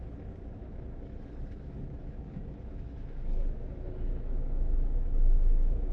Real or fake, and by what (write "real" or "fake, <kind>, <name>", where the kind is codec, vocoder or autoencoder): fake, autoencoder, DAC-VAE